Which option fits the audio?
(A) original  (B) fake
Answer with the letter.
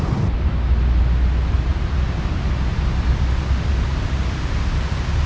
A